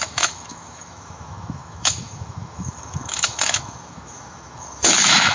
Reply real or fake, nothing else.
fake